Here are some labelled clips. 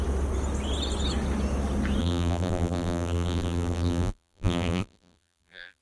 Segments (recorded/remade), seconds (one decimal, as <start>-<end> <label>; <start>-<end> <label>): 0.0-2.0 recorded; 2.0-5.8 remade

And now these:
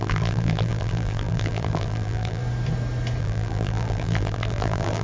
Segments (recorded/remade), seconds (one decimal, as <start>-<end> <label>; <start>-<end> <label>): 0.0-2.4 remade; 2.4-3.2 recorded; 3.2-5.0 remade

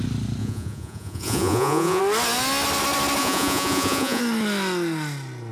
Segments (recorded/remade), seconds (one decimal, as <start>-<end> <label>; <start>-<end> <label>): 0.0-0.4 recorded; 0.4-2.0 remade; 2.0-3.2 recorded; 3.2-4.2 remade; 4.2-5.5 recorded